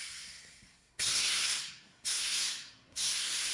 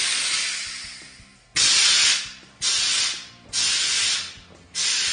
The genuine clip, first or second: second